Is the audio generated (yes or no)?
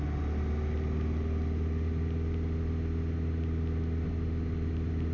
no